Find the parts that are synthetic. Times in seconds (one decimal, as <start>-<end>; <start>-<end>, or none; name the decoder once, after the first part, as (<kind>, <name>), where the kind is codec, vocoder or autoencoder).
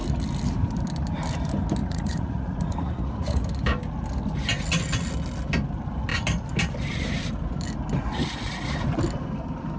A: 1.8-3.4 (vocoder, Vocos)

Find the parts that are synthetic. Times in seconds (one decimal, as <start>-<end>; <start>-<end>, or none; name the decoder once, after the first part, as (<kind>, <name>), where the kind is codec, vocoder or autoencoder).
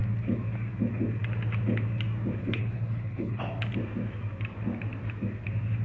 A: 2.4-3.4 (codec, HILCodec)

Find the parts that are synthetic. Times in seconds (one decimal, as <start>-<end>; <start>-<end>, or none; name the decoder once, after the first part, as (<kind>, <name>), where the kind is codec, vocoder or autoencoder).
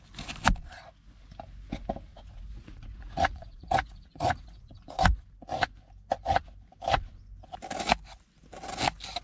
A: 2.1-5.2 (vocoder, Vocos)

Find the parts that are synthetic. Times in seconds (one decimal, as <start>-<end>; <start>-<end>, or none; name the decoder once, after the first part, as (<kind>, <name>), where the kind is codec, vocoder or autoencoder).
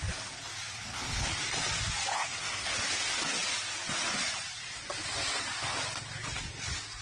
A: 0.9-1.4 (codec, HILCodec); 2.1-2.7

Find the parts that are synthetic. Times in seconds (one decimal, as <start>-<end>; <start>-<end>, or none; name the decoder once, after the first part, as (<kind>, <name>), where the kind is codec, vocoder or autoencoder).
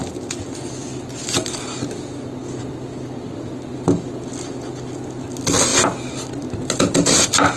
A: 0.9-3.2 (vocoder, BigVGAN v2); 5.7-7.6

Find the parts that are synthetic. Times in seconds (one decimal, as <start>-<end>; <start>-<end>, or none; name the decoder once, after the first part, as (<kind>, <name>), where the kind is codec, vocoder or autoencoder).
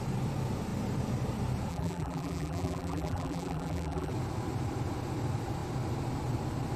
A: 1.7-4.1 (vocoder, BigVGAN v2)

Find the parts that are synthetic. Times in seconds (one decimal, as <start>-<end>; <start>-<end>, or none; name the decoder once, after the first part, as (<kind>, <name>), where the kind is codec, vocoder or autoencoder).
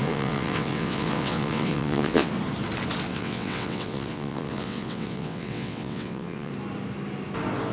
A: 0.0-2.3 (vocoder, WaveNeXt); 3.1-6.5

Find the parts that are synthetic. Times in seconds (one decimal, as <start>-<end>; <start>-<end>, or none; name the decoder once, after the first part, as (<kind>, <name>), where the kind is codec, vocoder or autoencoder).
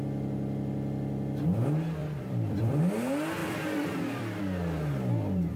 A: 2.0-2.8 (vocoder, BigVGAN v2); 3.4-4.4